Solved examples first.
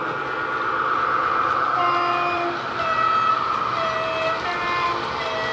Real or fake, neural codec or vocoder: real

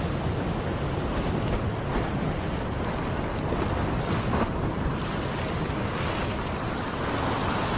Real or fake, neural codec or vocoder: real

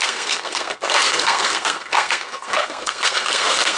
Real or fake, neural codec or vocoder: fake, codec, SNAC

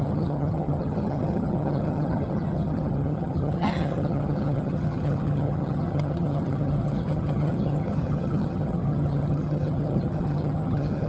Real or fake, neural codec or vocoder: fake, vocoder, HiFi-GAN